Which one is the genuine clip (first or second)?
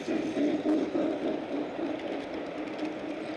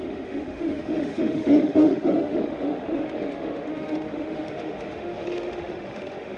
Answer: first